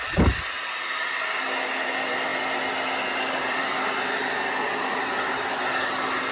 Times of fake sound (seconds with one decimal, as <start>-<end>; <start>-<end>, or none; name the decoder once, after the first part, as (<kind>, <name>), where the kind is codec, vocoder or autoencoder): none